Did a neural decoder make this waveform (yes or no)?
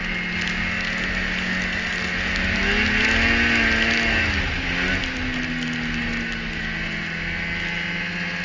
no